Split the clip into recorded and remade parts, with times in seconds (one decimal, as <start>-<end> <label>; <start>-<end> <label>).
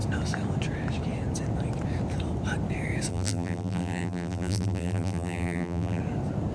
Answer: 0.0-3.1 recorded; 3.1-6.0 remade; 6.0-6.5 recorded